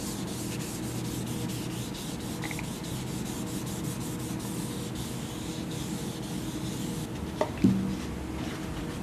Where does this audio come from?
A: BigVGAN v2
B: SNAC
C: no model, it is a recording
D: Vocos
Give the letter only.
C